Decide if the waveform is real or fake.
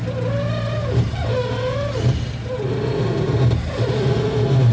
real